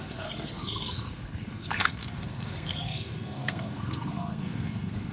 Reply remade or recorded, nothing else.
remade